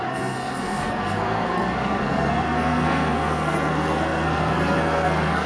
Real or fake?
fake